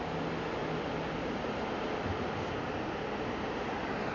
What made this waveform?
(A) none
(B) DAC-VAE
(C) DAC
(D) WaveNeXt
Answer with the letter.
A